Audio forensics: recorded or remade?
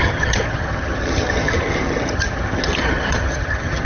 remade